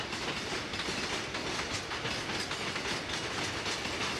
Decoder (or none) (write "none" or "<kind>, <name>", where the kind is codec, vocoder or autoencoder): none